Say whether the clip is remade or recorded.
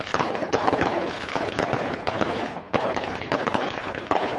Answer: remade